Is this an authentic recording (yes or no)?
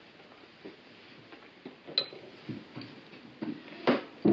yes